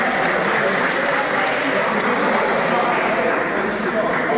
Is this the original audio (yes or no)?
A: yes